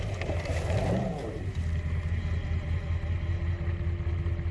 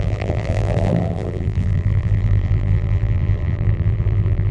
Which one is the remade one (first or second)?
second